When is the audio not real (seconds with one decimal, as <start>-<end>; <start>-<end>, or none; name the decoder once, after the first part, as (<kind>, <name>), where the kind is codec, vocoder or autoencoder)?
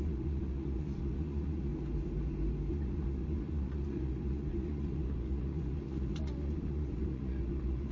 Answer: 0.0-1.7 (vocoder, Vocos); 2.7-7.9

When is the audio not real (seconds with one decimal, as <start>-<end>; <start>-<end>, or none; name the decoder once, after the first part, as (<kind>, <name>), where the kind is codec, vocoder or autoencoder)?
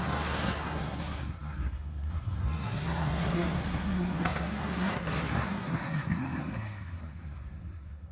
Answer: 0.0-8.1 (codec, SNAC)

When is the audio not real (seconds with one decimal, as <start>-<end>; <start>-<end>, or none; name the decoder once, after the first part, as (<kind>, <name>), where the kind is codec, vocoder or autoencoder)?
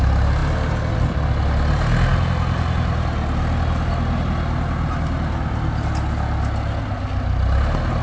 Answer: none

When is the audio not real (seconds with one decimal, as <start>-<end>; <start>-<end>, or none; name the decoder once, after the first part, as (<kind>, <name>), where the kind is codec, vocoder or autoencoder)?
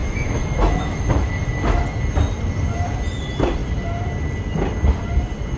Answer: 0.0-1.8 (autoencoder, DAC-VAE)